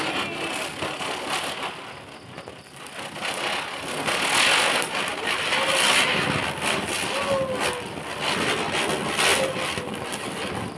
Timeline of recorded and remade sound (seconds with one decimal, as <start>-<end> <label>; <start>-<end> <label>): 0.0-10.8 recorded